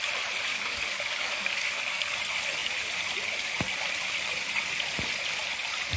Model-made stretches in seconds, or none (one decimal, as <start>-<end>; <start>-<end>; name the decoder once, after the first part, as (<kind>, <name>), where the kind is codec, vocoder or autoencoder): 0.5-2.2 (codec, DAC)